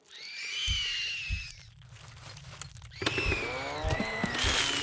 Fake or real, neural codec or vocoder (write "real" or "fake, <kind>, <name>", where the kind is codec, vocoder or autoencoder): real